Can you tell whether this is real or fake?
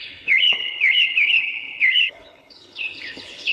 fake